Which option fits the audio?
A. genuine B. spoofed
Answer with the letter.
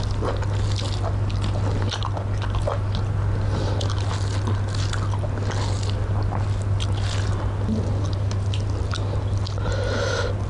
A